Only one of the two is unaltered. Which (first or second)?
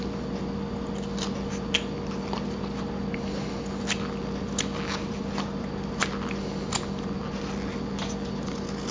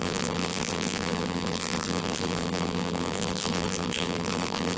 first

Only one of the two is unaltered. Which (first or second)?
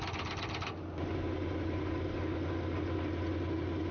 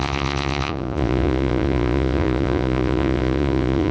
first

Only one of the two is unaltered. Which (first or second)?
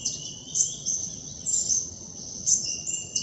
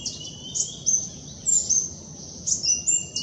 second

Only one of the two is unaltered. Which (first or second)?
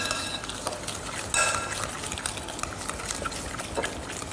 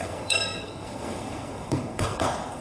first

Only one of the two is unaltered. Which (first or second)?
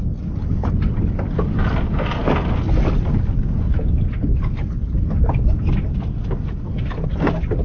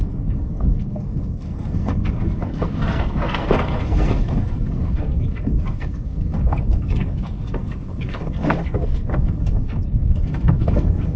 first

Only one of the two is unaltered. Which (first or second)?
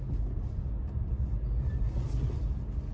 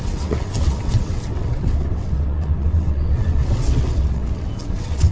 first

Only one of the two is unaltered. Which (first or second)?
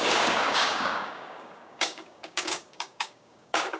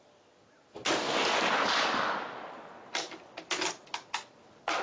second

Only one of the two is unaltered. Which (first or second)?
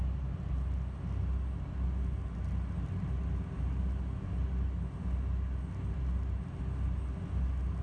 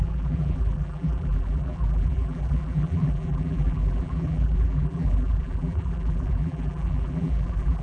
first